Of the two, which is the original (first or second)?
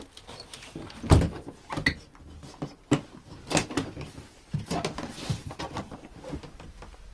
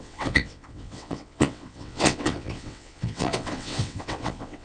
first